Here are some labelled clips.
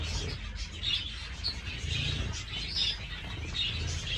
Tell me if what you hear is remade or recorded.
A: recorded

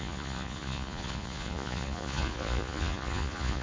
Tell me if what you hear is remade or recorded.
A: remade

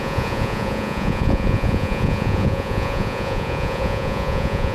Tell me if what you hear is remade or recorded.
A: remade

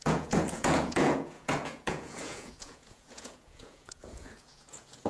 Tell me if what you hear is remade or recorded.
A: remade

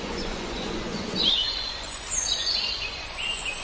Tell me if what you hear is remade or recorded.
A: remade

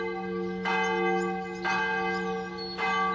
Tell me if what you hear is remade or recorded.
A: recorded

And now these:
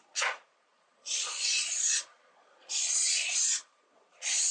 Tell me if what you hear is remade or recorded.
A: remade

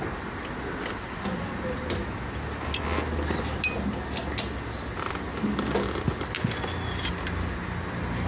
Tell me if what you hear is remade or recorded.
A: recorded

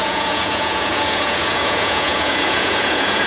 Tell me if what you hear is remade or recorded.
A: remade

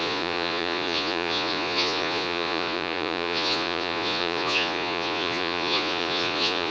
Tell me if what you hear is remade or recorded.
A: remade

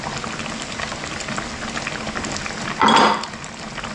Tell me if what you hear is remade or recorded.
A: recorded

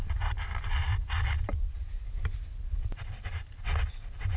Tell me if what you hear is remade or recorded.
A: recorded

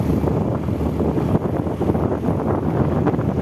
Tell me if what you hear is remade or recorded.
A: recorded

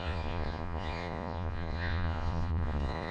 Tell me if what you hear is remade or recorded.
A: remade